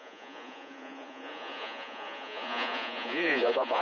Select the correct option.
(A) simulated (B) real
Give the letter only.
A